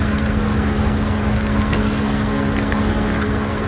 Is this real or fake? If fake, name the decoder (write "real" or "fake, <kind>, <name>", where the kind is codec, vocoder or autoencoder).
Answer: fake, codec, SNAC